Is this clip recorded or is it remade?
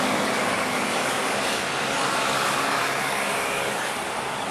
remade